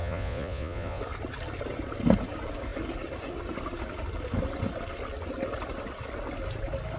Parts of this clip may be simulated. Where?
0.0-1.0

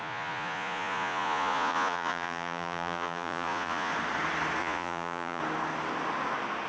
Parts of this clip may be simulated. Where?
0.0-3.9; 4.6-5.4

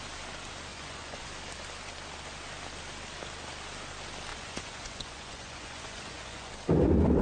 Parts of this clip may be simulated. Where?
0.7-1.3; 4.3-6.5